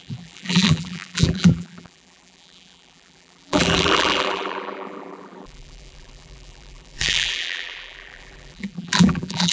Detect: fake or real fake